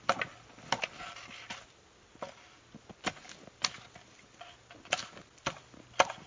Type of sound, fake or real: real